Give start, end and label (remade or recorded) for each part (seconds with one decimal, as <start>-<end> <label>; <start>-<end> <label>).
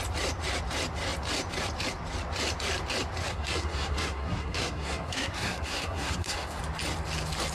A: 0.0-3.3 recorded; 3.3-6.6 remade; 6.6-7.5 recorded